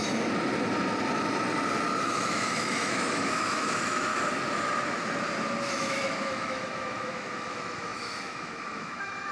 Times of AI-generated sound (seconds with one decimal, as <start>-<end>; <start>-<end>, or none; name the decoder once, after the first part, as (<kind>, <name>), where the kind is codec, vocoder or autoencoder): 2.0-4.1 (autoencoder, DAC-VAE); 5.7-9.3